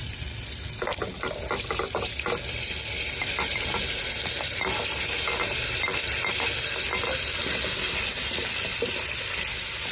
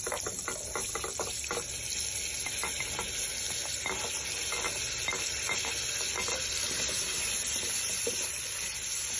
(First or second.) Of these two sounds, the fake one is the first